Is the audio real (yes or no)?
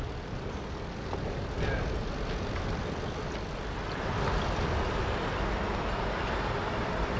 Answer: yes